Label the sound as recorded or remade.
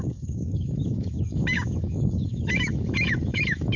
remade